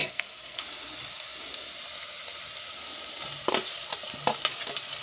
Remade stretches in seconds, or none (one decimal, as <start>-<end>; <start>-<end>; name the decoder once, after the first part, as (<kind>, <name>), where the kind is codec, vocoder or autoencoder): 0.0-0.6 (codec, SNAC)

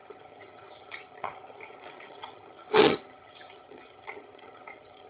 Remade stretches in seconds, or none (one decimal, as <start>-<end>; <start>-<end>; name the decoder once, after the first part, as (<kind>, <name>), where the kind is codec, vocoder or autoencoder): 0.0-5.1 (vocoder, HiFi-GAN)

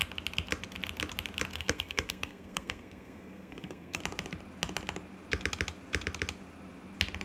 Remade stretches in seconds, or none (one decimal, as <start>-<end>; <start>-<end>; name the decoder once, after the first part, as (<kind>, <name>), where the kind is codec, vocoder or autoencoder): 1.5-4.0 (codec, SNAC)